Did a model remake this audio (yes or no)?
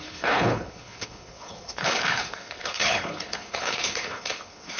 yes